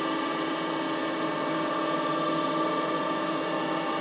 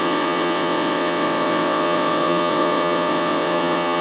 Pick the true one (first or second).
first